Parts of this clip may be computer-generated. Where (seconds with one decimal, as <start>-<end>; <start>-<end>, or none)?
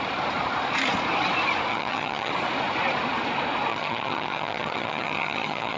1.7-2.3; 3.7-5.8